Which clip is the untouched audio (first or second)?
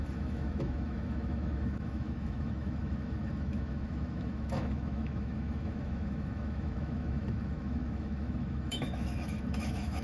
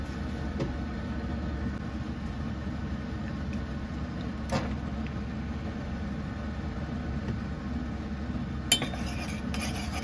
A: second